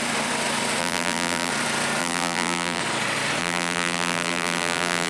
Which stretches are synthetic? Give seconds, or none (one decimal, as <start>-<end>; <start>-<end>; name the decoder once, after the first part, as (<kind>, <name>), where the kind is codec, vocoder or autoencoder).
0.8-1.5 (vocoder, BigVGAN v2); 2.0-2.8; 3.4-5.1